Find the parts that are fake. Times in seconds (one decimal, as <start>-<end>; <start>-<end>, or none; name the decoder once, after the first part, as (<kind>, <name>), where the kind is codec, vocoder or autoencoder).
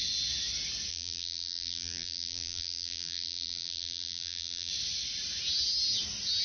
0.9-4.7 (vocoder, BigVGAN v2)